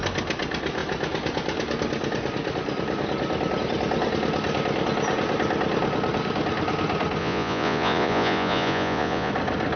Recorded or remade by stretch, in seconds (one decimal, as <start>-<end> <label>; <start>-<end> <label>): 0.0-7.2 recorded; 7.2-9.3 remade; 9.3-9.8 recorded